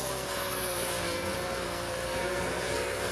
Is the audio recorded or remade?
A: remade